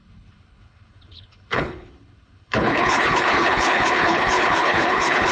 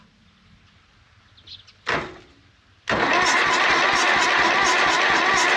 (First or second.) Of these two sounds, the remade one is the first